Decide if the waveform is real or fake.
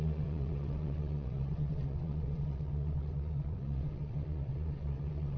fake